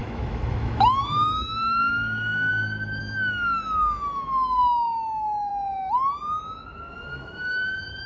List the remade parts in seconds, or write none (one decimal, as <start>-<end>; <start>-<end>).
0.0-2.5; 3.0-5.5; 7.1-8.1